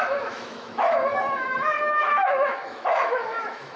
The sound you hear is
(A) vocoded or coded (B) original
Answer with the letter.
A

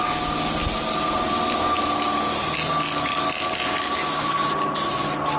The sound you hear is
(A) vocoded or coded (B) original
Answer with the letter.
B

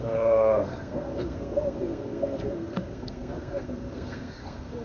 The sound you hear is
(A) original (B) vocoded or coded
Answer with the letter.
B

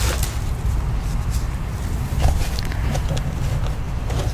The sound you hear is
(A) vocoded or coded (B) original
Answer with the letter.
B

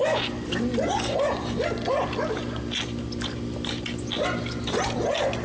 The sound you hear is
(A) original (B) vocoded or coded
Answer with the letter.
A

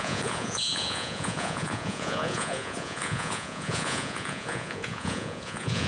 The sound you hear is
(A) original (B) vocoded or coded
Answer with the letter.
B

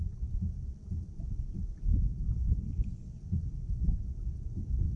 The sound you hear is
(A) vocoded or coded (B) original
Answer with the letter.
B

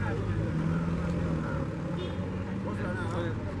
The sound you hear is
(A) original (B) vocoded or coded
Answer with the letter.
A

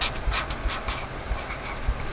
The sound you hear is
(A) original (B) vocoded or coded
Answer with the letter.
A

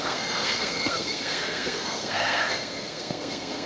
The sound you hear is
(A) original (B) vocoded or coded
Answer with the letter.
B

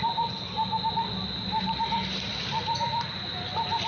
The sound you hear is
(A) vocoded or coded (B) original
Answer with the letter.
B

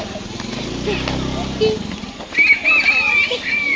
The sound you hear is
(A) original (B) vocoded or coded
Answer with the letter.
A